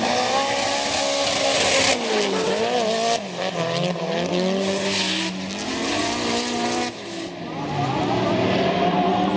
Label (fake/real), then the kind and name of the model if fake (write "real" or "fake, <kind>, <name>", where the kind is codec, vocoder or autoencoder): real